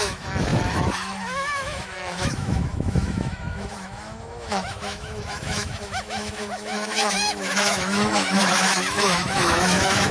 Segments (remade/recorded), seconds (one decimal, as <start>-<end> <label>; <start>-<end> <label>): 0.0-10.1 remade